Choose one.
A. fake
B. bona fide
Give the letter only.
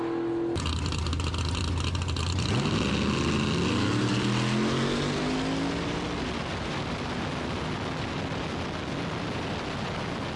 B